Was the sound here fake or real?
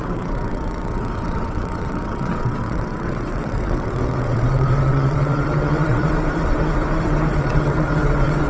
fake